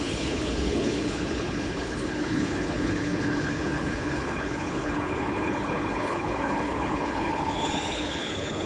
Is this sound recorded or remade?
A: remade